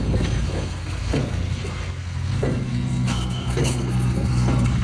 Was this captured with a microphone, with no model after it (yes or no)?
no